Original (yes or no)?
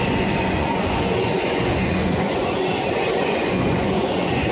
no